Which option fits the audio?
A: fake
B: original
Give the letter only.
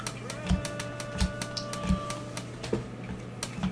B